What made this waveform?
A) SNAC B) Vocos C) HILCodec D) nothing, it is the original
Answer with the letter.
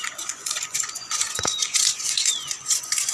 B